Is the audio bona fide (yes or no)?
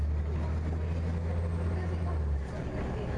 yes